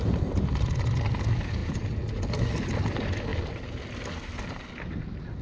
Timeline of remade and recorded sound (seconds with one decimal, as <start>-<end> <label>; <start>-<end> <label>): 0.0-5.4 recorded